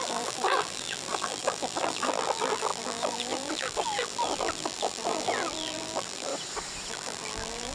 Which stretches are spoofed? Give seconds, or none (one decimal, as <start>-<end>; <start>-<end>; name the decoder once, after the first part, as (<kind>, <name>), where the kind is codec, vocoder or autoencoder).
0.0-6.3 (vocoder, BigVGAN v2); 6.9-7.7